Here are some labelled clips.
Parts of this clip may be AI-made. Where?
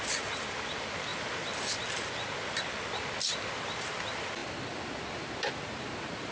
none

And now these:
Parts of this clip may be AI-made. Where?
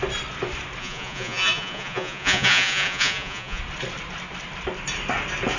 0.8-3.6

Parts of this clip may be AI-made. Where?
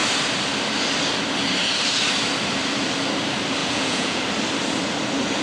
3.6-4.2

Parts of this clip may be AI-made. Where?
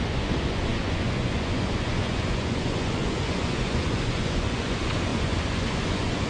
0.0-6.3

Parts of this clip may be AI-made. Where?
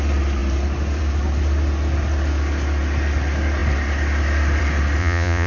5.0-5.5